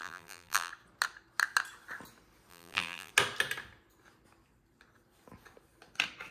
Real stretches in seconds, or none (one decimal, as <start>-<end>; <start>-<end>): 0.7-2.5; 3.1-6.3